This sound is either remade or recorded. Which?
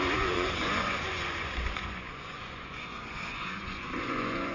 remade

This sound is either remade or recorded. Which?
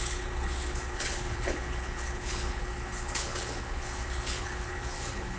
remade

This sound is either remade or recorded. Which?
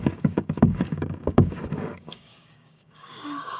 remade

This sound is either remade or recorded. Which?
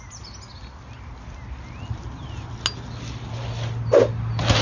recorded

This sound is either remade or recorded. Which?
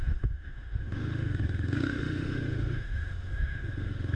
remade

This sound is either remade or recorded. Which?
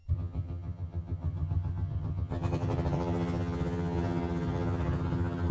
remade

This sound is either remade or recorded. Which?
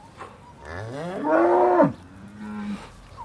recorded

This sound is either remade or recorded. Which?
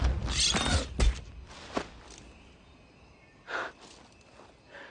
recorded